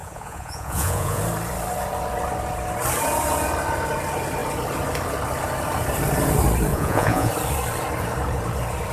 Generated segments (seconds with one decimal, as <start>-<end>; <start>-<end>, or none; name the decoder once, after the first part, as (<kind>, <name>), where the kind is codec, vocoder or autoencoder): 0.0-1.2 (vocoder, Vocos); 6.7-7.3